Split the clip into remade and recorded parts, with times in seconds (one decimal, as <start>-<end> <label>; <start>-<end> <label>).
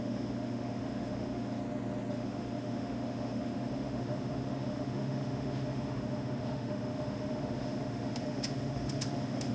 0.0-1.6 remade; 1.6-2.1 recorded; 2.1-9.5 remade